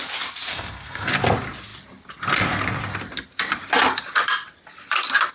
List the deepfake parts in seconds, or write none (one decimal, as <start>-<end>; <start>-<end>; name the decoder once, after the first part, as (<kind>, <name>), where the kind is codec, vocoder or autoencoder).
0.5-1.1 (codec, SNAC)